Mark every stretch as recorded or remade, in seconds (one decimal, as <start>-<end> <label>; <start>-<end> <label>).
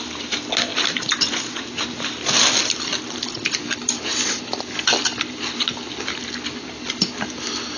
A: 0.0-7.8 recorded